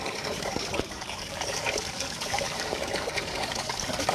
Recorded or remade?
remade